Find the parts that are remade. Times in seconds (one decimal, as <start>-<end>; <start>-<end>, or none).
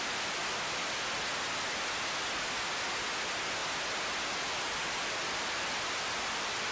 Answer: none